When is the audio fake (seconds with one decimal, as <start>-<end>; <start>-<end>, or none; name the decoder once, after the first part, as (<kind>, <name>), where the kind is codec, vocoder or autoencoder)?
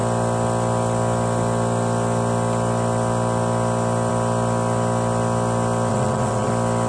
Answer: 5.9-6.5 (vocoder, WaveNeXt)